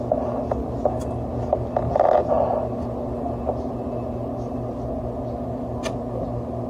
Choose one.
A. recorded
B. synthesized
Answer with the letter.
A